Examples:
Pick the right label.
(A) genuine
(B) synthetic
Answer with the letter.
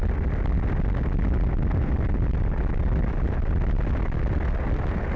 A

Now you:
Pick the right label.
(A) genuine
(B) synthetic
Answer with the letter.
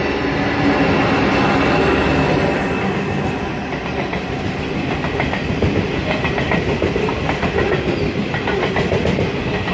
A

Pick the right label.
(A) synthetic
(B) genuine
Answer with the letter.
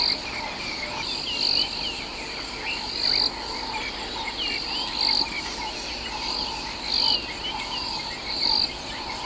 B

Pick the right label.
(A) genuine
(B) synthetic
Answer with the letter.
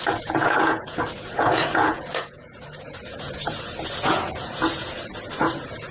B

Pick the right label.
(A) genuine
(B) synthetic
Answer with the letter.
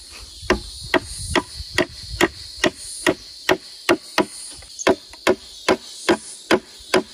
A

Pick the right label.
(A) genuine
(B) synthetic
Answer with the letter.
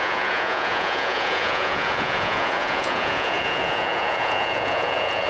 B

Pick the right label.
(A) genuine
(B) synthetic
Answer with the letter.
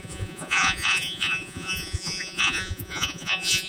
B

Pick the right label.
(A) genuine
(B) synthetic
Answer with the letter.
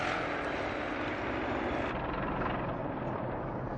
A